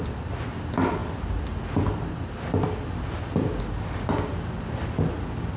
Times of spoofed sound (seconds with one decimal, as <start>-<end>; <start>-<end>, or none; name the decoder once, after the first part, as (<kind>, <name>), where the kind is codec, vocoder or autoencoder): none